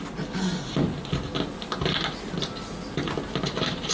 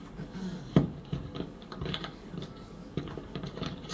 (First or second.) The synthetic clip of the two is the second